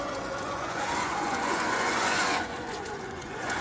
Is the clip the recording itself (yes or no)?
no